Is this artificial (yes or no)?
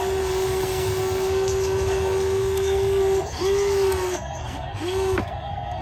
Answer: yes